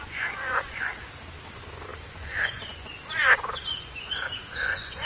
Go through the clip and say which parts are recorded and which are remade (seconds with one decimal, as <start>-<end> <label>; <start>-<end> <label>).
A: 0.0-0.9 remade; 0.9-1.5 recorded; 1.5-5.1 remade